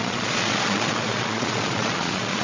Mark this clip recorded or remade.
remade